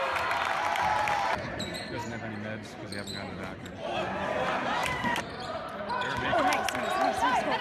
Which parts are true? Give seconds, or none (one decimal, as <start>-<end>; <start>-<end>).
0.0-4.8; 5.7-7.6